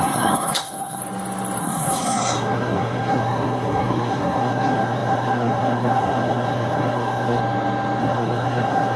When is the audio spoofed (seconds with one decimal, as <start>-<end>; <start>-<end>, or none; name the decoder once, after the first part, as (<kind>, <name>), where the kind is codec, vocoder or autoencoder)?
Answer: 0.0-1.0 (codec, SNAC); 1.6-7.4; 8.0-9.0